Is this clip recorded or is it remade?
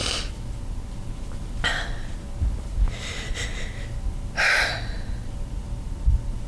recorded